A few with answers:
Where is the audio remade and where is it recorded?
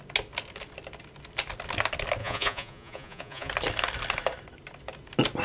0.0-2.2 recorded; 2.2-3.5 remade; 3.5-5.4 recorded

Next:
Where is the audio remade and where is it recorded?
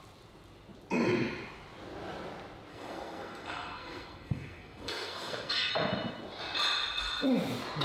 0.0-2.7 recorded; 2.7-5.7 remade; 5.7-7.8 recorded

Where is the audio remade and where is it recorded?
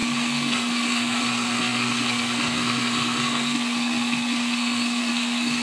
0.0-5.6 remade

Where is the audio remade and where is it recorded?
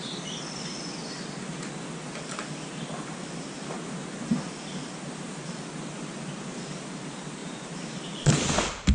0.0-8.9 recorded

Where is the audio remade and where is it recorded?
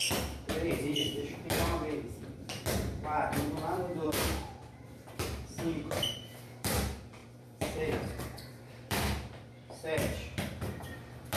0.0-11.4 remade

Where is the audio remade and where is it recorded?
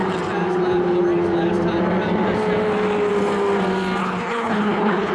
0.0-4.0 recorded; 4.0-5.1 remade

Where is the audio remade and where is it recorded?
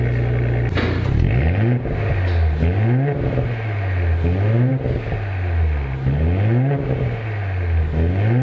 0.0-8.4 recorded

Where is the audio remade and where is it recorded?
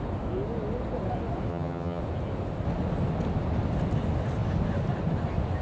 0.0-1.5 recorded; 1.5-2.0 remade; 2.0-5.6 recorded